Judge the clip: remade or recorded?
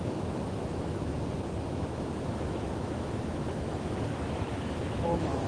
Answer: remade